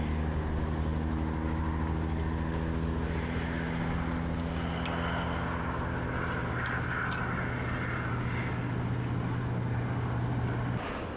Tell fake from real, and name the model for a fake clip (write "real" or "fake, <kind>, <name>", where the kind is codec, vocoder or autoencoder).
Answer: real